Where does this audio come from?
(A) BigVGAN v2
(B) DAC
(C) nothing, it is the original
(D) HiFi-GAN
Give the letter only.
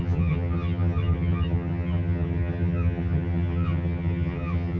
D